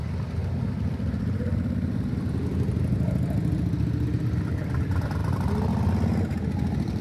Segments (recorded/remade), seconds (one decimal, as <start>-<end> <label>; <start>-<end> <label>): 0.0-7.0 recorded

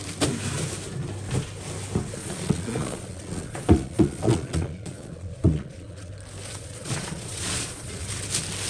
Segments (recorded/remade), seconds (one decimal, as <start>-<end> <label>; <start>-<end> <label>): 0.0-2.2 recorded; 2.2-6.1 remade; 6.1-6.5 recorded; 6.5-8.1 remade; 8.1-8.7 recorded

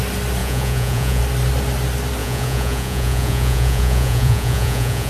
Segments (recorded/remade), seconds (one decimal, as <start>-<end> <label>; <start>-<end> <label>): 0.0-0.4 recorded; 0.4-1.2 remade; 1.2-2.2 recorded; 2.2-5.1 remade